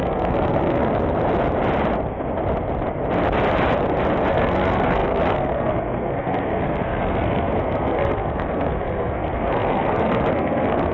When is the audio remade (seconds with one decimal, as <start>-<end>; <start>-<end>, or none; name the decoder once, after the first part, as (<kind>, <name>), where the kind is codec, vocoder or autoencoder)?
0.0-0.9 (codec, SNAC); 4.3-10.9